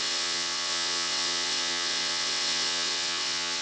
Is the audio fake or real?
fake